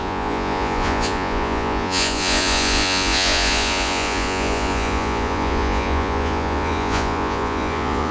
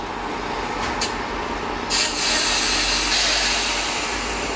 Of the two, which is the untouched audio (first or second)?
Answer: second